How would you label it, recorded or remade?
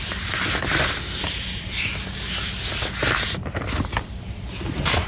recorded